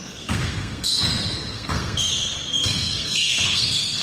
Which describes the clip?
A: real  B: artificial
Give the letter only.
B